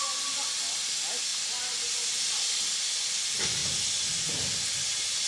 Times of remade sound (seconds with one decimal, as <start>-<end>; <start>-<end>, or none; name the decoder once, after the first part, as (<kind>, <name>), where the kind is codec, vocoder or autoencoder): none